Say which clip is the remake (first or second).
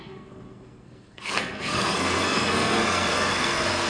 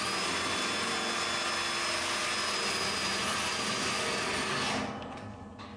first